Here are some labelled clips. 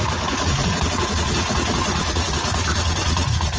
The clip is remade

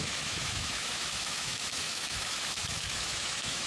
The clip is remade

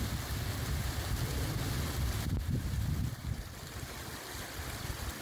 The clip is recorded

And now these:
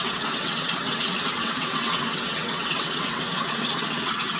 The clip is remade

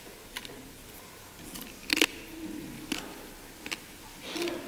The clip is recorded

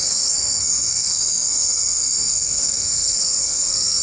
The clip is remade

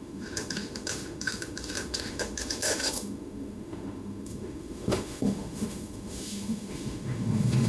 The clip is remade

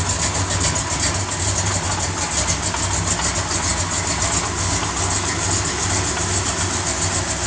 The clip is recorded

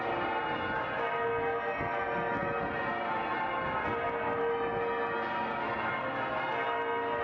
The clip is recorded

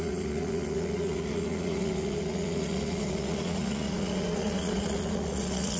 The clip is remade